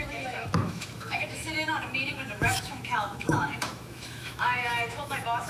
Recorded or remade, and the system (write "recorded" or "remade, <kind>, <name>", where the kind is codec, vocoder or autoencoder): remade, autoencoder, DAC-VAE